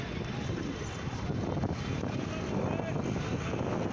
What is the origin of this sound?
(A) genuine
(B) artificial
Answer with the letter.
A